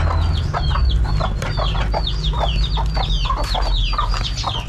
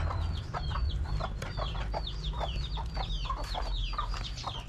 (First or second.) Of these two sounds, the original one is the first